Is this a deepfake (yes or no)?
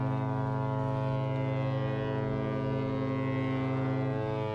no